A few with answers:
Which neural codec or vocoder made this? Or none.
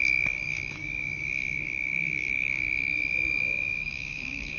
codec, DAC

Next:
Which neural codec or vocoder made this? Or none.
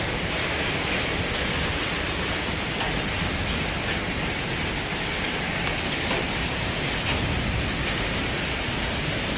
none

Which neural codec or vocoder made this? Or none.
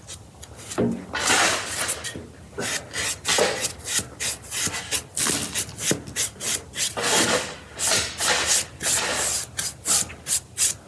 none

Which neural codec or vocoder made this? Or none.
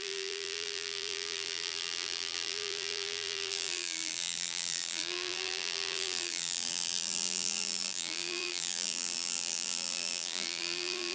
vocoder, BigVGAN v2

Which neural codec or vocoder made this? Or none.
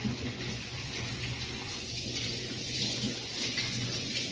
vocoder, Vocos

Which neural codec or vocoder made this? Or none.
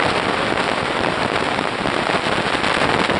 none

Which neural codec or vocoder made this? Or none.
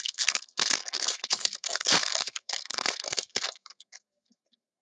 codec, SNAC